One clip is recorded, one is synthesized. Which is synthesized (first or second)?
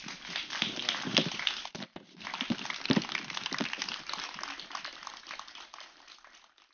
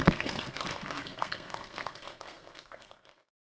second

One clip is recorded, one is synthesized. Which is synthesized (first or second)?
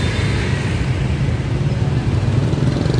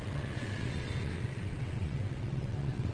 second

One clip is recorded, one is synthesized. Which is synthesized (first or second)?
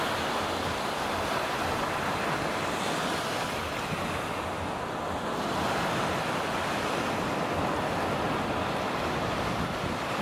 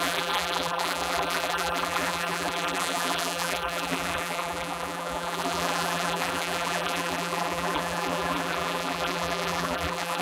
second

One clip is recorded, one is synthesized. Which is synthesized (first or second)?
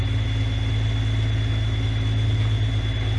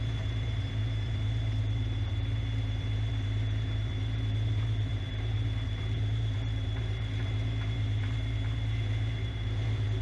second